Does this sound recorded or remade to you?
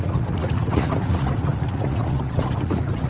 remade